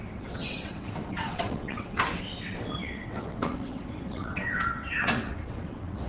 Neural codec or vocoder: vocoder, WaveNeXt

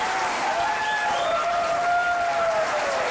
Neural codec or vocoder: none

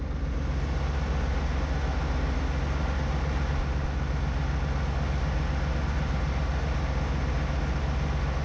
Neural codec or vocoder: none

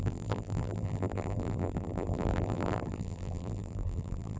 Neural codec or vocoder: vocoder, BigVGAN v2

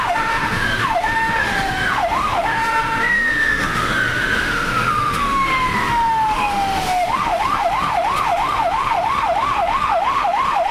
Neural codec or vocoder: autoencoder, DAC-VAE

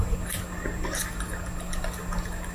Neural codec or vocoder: none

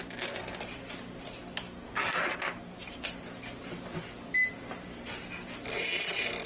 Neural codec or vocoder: none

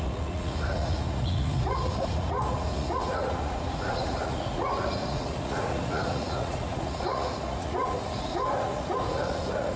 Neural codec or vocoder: vocoder, Vocos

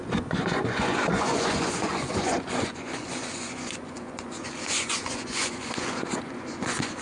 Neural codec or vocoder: vocoder, Vocos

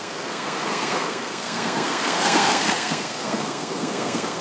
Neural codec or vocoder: codec, SNAC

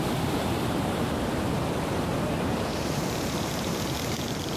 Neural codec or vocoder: vocoder, BigVGAN v2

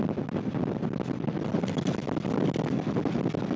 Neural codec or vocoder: none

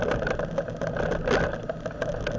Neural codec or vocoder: none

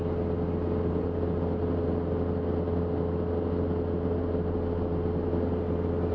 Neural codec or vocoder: none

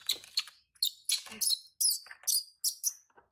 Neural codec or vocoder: none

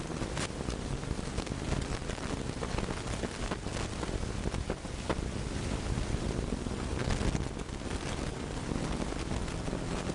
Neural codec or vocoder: none